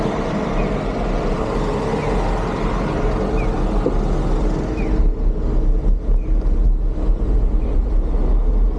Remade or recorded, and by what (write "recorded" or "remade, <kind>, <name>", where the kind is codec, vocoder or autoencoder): recorded